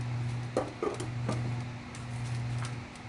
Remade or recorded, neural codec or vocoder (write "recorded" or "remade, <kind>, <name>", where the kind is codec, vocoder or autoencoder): recorded